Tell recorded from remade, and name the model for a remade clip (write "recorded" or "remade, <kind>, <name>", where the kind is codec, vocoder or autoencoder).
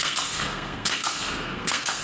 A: remade, codec, SNAC